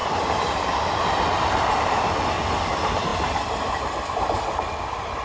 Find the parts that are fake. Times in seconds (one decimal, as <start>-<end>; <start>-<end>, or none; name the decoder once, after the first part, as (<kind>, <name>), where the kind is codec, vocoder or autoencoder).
none